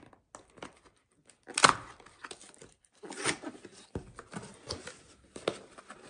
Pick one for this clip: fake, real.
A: real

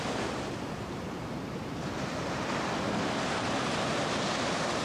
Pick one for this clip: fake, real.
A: real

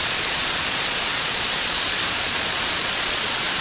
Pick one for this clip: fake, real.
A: fake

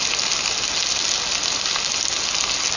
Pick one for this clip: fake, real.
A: real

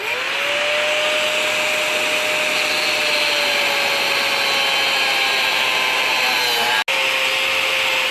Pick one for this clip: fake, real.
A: real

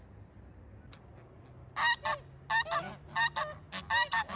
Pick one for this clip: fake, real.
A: real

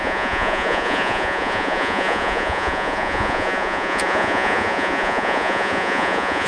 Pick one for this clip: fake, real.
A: fake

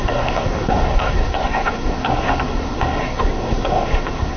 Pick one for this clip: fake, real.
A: fake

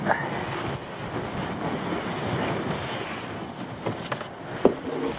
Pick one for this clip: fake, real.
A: real